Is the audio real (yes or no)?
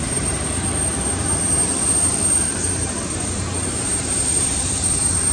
yes